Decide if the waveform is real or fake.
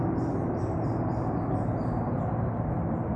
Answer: real